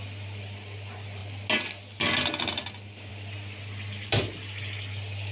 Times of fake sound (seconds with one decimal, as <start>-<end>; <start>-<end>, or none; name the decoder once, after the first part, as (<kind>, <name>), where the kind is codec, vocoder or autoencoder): none